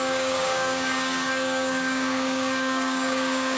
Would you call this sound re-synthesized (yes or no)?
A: yes